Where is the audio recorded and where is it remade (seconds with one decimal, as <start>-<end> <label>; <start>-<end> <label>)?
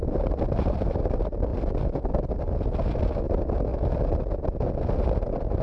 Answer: 0.0-5.6 recorded